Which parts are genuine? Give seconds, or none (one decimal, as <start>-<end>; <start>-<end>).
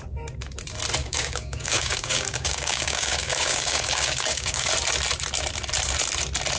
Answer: 0.0-1.0; 4.7-6.6